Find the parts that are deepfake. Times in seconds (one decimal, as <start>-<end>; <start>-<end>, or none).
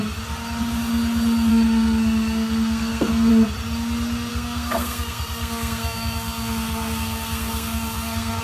1.5-3.3; 4.3-8.4